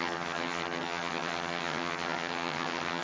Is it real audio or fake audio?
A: fake